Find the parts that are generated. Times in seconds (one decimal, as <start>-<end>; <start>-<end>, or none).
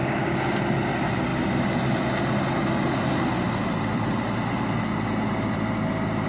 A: 0.0-0.6